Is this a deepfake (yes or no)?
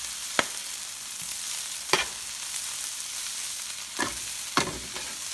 no